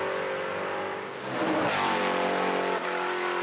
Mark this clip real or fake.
real